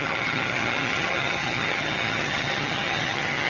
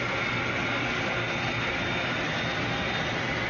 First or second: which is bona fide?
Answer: second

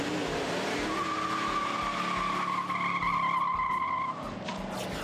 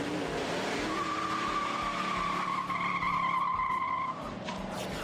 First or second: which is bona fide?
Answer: first